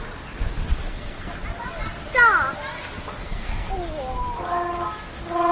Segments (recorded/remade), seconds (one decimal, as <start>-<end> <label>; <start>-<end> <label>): 0.0-0.7 recorded; 0.7-1.3 remade; 1.3-3.2 recorded; 3.2-3.7 remade; 3.7-5.5 recorded